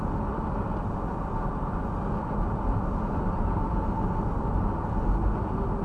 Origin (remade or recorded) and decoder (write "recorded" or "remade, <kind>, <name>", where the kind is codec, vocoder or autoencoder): recorded